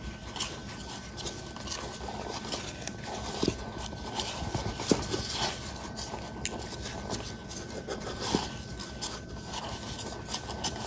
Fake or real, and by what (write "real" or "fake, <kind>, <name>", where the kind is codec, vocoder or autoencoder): real